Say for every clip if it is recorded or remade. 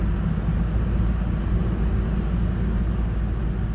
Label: recorded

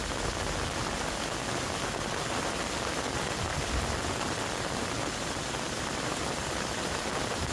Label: recorded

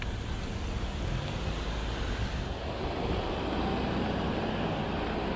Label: recorded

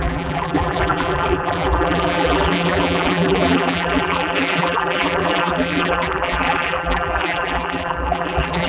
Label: remade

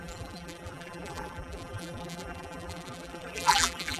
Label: remade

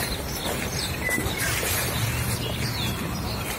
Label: remade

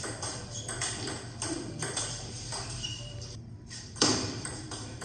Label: remade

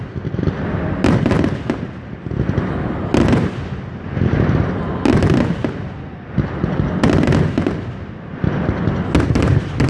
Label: recorded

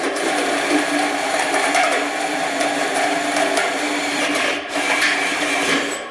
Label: remade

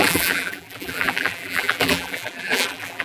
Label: remade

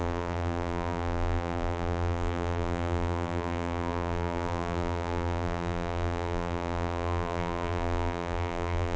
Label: remade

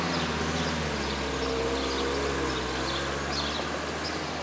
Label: recorded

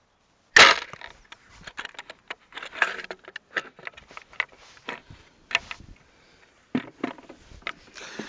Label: recorded